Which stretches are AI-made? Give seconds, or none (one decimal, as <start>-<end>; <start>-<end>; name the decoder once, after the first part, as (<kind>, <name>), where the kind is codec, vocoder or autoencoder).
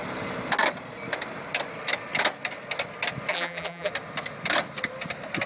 3.3-3.9 (vocoder, BigVGAN v2)